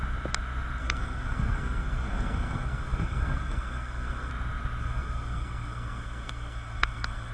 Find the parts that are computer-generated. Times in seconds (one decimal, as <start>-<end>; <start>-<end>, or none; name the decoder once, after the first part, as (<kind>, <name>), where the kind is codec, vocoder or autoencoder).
0.8-4.3 (codec, SNAC); 4.8-7.3